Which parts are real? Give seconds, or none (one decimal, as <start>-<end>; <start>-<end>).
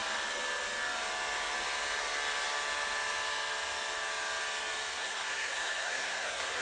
0.0-5.0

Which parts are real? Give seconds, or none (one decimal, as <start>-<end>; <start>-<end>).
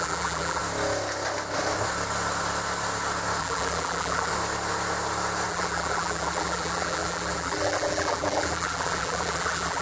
0.6-3.4; 4.3-5.5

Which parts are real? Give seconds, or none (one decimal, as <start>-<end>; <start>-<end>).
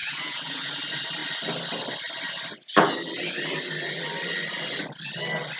0.7-5.6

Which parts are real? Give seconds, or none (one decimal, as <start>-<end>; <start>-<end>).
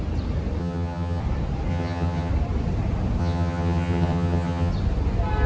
0.0-0.6; 1.2-1.7; 2.3-3.2; 4.7-5.5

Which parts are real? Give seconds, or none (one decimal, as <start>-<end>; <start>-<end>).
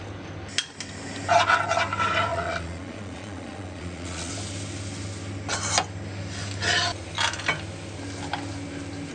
0.0-2.3; 4.3-9.1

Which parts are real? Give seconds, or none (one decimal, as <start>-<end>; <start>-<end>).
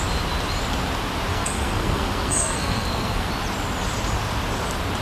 0.0-1.3; 3.3-5.0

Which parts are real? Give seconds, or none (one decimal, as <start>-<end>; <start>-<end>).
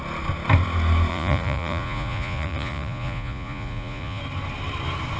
0.0-1.1; 4.2-5.2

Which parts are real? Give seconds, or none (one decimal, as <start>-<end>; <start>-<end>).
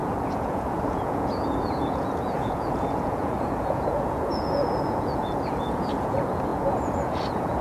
none